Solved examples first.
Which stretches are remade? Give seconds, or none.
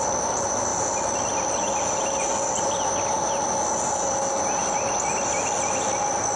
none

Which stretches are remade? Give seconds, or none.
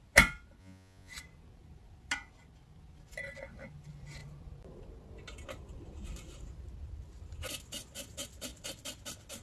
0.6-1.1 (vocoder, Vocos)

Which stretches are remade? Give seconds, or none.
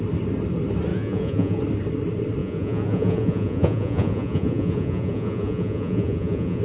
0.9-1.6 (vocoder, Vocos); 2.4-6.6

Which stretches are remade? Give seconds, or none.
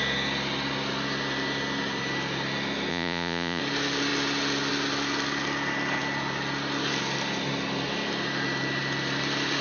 2.9-3.6 (vocoder, Vocos)